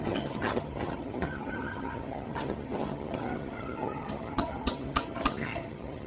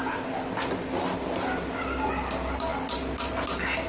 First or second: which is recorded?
second